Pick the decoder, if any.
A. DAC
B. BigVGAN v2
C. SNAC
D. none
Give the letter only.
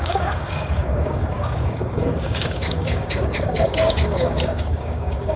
A